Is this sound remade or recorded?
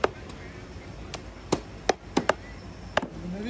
recorded